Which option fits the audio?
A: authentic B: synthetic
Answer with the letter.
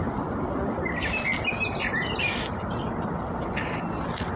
A